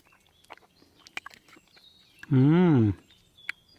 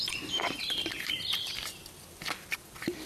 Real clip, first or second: first